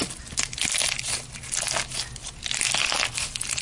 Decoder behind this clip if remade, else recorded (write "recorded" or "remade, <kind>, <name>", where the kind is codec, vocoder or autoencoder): recorded